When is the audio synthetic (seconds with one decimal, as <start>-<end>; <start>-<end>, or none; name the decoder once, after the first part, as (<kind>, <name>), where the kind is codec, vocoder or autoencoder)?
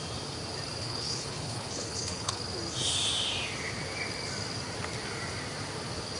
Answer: 0.8-2.4 (codec, HILCodec)